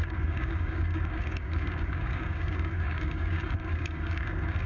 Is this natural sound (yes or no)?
no